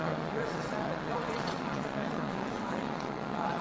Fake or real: fake